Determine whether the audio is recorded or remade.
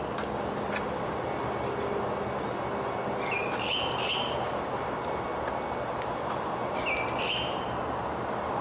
recorded